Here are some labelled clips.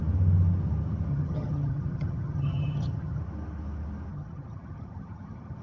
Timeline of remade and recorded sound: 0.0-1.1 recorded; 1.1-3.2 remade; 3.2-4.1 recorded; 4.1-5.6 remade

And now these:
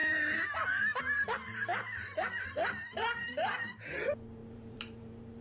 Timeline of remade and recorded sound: 0.0-1.7 recorded; 1.7-3.9 remade; 3.9-4.4 recorded; 4.4-5.4 remade

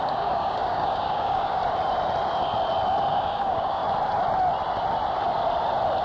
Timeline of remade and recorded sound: 0.0-1.6 remade; 1.6-3.1 recorded; 3.1-3.8 remade; 3.8-6.0 recorded

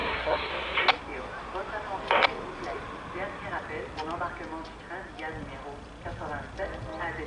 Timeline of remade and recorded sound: 0.0-0.5 remade; 0.5-7.3 recorded